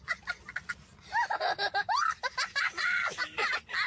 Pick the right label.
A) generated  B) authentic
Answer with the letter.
B